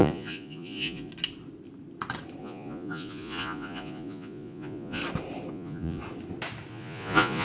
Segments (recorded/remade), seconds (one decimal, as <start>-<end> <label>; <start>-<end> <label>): 0.0-1.1 remade; 1.1-2.4 recorded; 2.4-5.0 remade; 5.0-5.5 recorded; 5.5-6.0 remade; 6.0-6.7 recorded; 6.7-7.4 remade